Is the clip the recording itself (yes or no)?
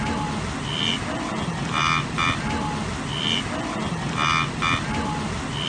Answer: yes